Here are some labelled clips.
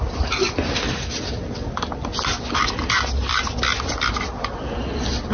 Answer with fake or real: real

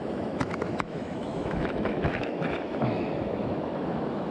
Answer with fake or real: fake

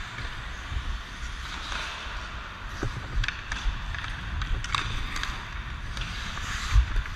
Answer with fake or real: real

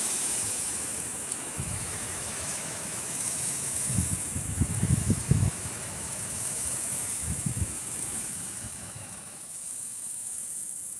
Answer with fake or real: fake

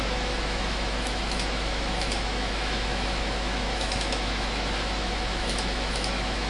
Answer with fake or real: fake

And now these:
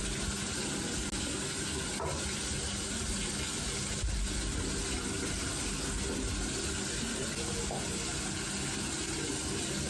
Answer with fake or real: real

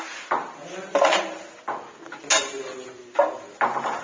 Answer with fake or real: real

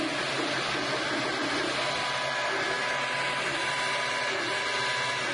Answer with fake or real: real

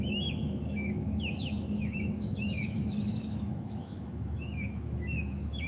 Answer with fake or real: fake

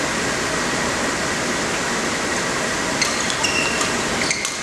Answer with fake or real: real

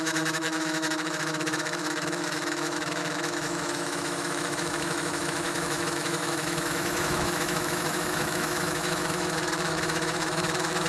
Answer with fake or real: fake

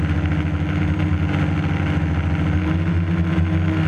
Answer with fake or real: real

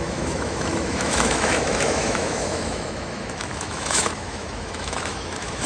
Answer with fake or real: fake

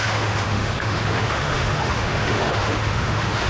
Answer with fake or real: fake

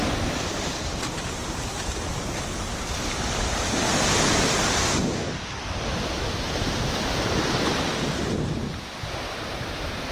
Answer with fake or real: real